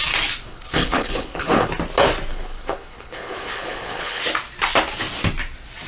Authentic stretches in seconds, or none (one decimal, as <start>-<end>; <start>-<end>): 0.0-0.4; 1.7-2.3; 4.2-5.9